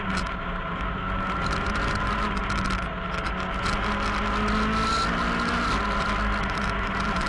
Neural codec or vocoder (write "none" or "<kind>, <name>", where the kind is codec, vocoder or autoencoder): none